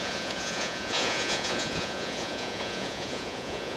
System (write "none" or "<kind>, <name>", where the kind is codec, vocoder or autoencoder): vocoder, Vocos